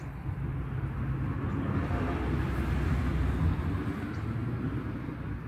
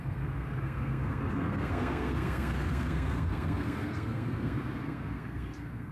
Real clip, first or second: first